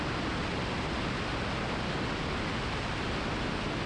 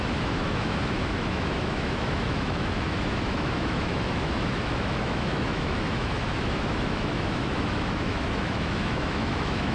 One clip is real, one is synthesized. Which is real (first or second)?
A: first